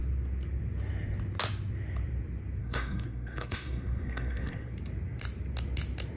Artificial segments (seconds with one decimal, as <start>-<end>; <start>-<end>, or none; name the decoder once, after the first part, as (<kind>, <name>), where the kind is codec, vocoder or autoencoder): 2.6-4.7 (codec, SNAC)